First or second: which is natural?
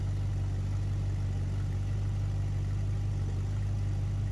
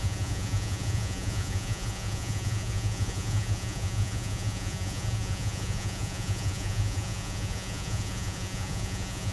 first